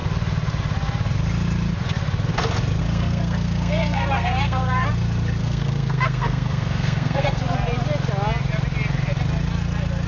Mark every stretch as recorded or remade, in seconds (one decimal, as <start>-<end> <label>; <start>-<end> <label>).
0.0-2.8 recorded; 2.8-4.9 remade; 4.9-5.4 recorded; 5.4-7.4 remade; 7.4-10.1 recorded